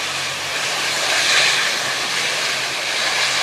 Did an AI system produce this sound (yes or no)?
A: no